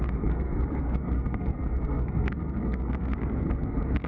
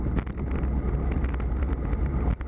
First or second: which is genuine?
second